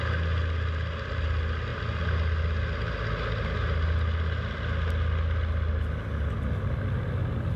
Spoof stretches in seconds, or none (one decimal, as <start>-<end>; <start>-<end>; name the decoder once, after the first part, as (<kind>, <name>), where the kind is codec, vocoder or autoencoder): none